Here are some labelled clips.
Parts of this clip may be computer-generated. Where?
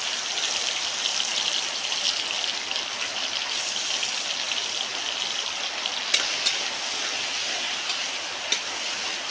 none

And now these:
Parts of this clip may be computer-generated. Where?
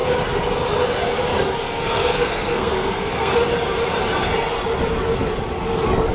1.6-3.3 (codec, SNAC)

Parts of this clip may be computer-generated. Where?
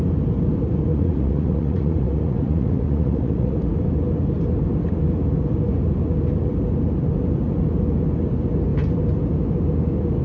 0.9-3.6 (vocoder, Vocos)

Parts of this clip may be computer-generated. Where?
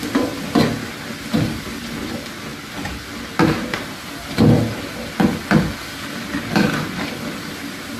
none